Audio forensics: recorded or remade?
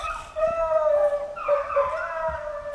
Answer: recorded